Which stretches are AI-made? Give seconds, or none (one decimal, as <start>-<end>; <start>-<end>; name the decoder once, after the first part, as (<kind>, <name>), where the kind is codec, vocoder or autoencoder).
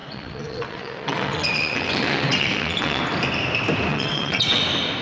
0.0-3.0 (vocoder, WaveNeXt); 3.9-4.6